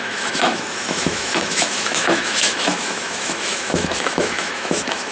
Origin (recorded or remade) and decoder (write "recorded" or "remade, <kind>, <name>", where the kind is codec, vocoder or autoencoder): remade, autoencoder, DAC-VAE